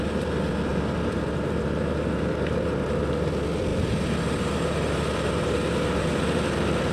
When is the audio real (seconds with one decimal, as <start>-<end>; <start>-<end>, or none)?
0.0-0.7; 3.0-3.7